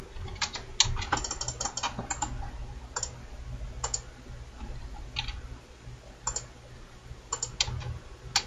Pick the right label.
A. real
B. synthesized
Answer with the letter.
A